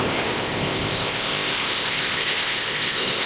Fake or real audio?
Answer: fake